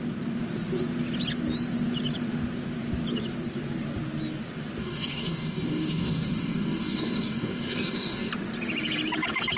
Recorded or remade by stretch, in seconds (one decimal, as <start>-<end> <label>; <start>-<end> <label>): 0.0-4.8 recorded; 4.8-8.3 remade; 8.3-9.6 recorded